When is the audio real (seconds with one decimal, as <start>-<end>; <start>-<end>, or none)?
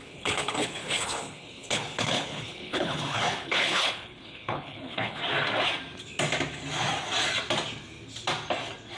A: 5.2-9.0